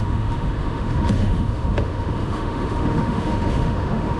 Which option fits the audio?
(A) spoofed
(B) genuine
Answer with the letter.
A